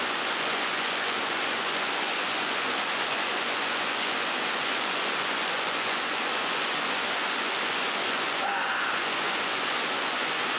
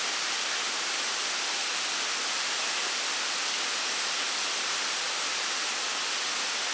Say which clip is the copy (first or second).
first